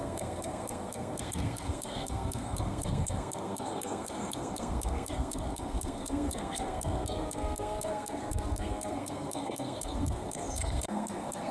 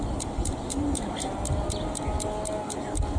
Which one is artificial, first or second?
first